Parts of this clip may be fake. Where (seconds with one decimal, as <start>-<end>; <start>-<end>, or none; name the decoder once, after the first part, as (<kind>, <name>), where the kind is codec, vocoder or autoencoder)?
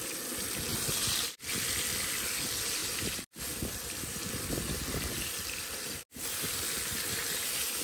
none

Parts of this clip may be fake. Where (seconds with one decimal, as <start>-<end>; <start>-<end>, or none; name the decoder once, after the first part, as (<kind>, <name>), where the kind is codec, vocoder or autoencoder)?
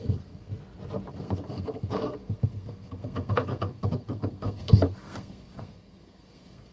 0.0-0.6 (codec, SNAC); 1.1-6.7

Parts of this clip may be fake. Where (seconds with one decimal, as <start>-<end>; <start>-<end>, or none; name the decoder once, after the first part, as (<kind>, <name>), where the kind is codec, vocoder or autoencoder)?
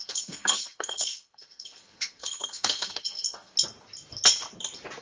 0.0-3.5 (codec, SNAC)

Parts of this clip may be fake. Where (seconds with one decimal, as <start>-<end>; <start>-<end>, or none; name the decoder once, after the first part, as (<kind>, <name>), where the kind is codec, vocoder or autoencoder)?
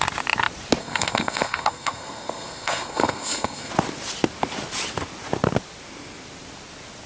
0.8-3.7 (codec, SNAC)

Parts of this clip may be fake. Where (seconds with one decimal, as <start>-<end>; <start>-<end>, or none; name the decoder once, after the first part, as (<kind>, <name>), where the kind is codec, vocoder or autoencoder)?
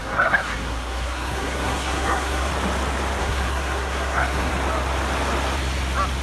0.0-2.5 (codec, SNAC); 3.2-4.5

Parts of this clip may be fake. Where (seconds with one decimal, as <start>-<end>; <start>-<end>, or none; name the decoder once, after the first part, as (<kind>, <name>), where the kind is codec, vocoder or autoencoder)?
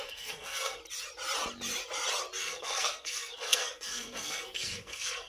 0.0-0.8 (codec, SNAC); 2.4-5.3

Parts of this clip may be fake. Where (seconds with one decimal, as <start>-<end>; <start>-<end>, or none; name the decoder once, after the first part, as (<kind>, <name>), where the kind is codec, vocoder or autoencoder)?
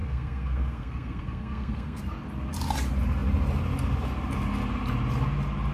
0.0-2.0 (codec, SNAC)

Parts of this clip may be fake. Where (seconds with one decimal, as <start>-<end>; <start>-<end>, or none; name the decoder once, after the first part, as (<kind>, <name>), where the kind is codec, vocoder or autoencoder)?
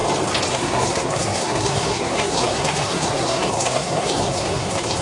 0.5-5.0 (codec, SNAC)